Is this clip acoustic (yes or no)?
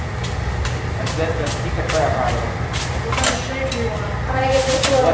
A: yes